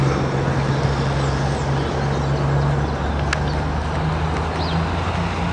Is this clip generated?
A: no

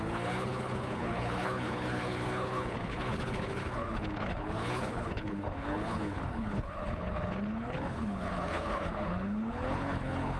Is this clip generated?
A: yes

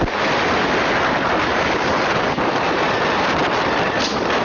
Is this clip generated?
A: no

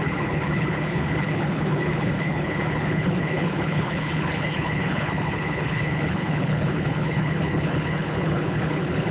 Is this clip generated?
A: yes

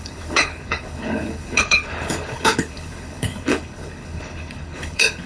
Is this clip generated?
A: yes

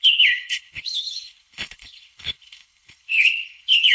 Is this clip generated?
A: yes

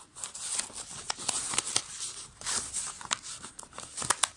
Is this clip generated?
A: no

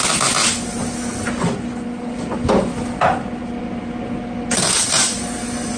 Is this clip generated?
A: no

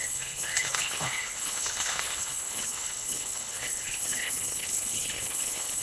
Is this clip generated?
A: yes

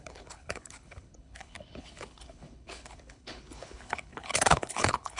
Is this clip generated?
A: yes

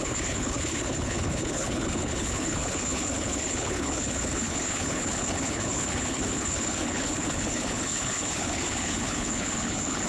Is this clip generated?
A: yes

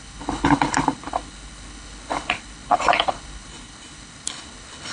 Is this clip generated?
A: yes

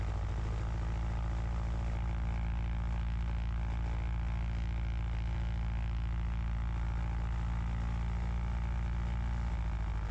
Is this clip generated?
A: no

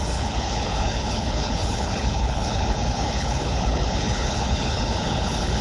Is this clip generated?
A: yes